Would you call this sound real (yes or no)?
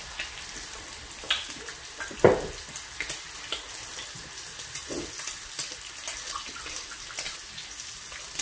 yes